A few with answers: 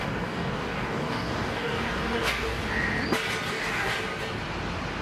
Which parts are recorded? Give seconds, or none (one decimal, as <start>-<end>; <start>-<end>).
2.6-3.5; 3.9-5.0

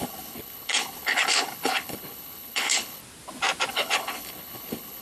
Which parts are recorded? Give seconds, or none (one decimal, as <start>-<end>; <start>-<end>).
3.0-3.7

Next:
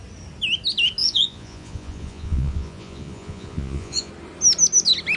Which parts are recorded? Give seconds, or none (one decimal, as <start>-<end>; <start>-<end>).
0.0-1.0; 4.1-5.2

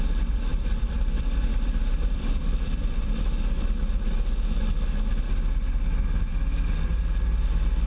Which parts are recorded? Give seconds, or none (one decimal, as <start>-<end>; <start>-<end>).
0.0-0.5; 3.2-7.9

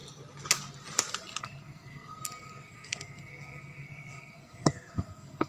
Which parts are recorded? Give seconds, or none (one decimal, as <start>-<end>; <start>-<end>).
0.0-1.4

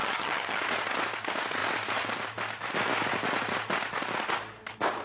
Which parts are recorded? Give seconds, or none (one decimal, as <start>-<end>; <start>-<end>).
0.6-5.0

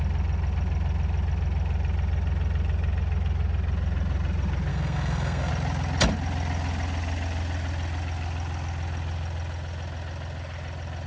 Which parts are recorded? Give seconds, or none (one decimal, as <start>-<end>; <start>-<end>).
0.0-4.7; 5.5-11.1

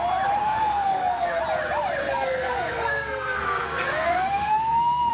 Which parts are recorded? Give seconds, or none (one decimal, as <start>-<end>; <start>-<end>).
0.0-0.4; 1.4-2.0